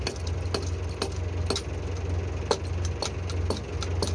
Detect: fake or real real